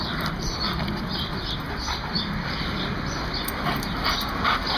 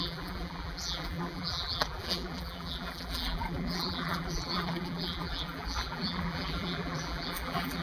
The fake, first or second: second